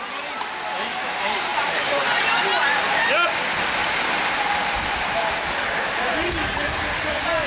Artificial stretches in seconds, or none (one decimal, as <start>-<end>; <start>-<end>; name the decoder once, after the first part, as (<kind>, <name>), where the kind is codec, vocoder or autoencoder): 1.5-2.0 (vocoder, BigVGAN v2); 3.8-7.5